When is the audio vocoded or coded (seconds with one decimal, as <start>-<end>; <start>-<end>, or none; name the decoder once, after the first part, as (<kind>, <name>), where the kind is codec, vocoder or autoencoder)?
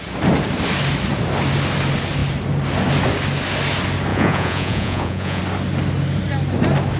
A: 4.1-5.4 (vocoder, Vocos)